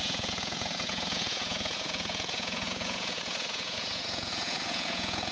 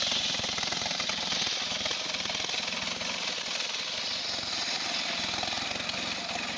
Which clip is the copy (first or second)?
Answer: first